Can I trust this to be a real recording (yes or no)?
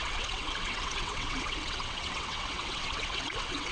no